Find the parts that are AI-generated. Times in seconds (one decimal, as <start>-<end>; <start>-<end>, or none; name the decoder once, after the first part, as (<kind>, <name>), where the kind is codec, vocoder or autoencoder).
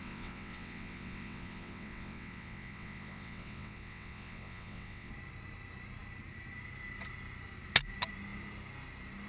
0.0-5.1 (vocoder, WaveNeXt)